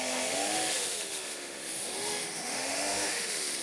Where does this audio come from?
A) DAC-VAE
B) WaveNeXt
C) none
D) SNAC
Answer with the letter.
A